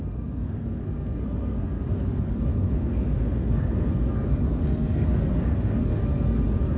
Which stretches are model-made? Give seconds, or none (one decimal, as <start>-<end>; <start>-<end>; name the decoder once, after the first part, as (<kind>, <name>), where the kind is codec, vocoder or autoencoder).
0.0-6.0 (codec, SNAC)